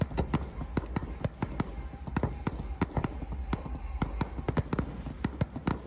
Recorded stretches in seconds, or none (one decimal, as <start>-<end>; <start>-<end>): 0.0-5.9